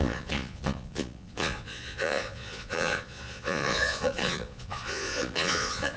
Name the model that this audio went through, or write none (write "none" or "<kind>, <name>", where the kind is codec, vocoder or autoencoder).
vocoder, Vocos